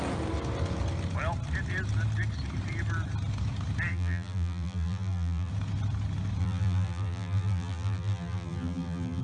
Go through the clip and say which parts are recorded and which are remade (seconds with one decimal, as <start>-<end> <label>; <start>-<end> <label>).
0.0-3.9 recorded; 3.9-5.5 remade; 5.5-6.4 recorded; 6.4-9.2 remade